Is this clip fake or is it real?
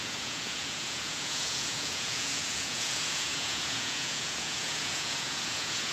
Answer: fake